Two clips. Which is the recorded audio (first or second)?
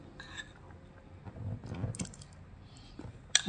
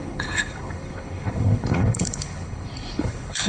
first